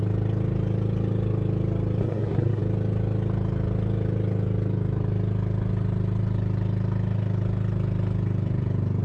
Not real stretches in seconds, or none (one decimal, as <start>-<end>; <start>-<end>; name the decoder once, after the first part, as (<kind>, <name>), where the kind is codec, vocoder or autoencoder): 2.0-2.6 (codec, SNAC)